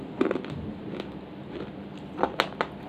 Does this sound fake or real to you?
real